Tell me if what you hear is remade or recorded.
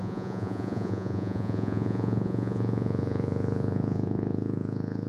remade